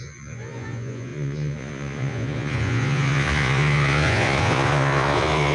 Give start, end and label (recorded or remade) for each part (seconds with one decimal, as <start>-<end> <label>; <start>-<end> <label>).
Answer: 0.0-5.5 remade